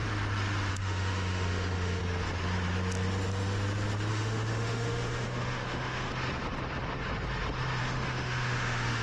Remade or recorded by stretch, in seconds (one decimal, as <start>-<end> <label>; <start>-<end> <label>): 0.0-0.7 recorded; 0.7-2.0 remade; 2.0-4.1 recorded; 4.1-6.1 remade; 6.1-7.8 recorded; 7.8-9.0 remade